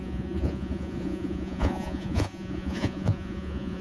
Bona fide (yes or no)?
no